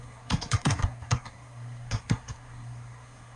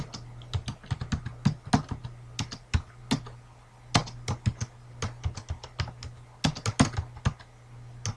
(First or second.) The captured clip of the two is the second